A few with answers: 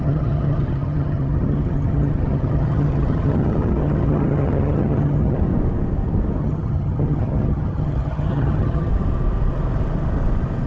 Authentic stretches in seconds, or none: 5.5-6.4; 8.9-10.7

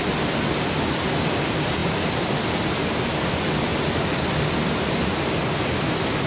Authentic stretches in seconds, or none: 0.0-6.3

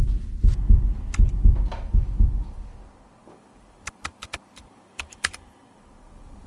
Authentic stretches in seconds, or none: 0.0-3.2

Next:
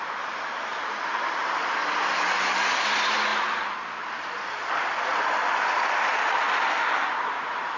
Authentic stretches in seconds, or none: 0.0-7.8

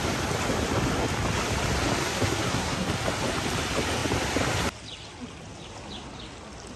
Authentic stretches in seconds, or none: 0.0-2.0; 2.9-6.8